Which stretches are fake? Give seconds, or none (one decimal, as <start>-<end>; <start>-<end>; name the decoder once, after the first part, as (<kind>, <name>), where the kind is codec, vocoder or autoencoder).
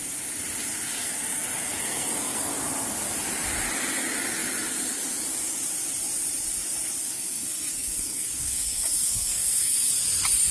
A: 1.0-2.5 (codec, SNAC); 7.0-9.9